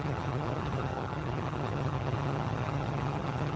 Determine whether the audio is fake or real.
fake